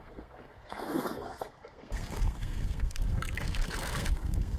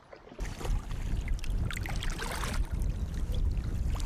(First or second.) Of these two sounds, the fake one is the first